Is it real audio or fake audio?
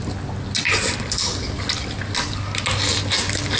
real